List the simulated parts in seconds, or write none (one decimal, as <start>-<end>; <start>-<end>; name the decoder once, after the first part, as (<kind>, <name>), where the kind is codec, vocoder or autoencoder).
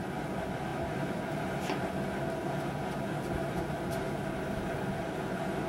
0.7-1.9 (vocoder, BigVGAN v2)